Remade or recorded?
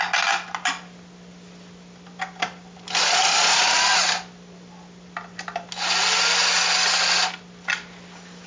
recorded